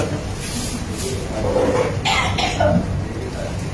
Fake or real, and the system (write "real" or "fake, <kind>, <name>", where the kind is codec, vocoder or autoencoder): real